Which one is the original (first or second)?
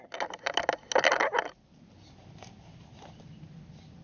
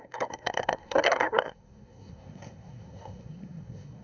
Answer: first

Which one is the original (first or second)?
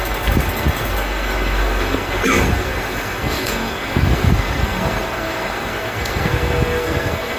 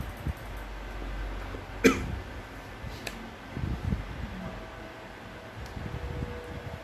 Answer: second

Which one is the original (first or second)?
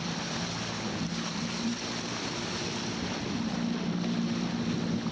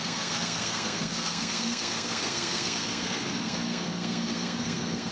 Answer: first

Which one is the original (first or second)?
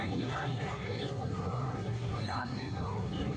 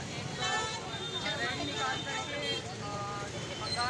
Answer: second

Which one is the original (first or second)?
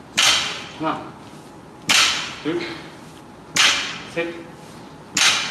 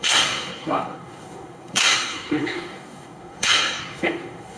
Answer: first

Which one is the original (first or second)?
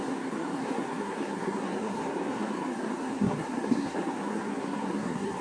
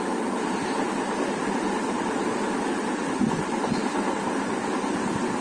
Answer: second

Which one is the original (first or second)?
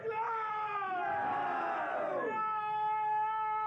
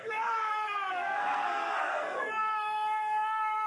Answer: first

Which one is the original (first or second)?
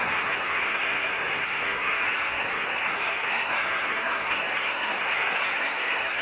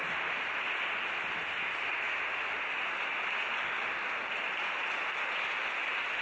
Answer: second